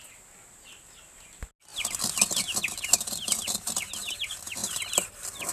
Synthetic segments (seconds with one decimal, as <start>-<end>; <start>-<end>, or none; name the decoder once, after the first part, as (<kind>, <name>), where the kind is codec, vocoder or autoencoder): 4.6-5.5 (vocoder, BigVGAN v2)